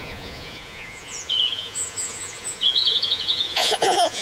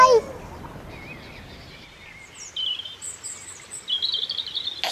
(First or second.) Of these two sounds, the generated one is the first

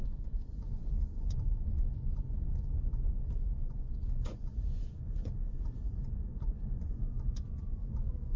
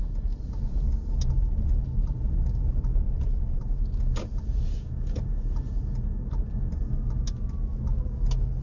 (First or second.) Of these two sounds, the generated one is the first